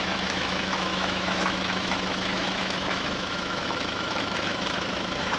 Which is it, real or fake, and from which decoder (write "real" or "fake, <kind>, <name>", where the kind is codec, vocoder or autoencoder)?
fake, autoencoder, DAC-VAE